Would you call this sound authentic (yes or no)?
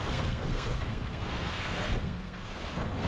no